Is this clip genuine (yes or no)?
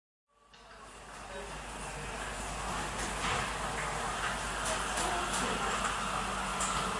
yes